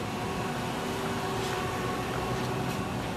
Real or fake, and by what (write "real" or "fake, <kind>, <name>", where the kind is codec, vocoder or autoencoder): real